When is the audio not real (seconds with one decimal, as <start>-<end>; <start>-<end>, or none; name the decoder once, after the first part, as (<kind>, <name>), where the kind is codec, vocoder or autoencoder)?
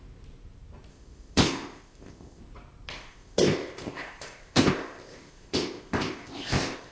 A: 0.9-2.4 (codec, ZipCodec); 2.9-6.9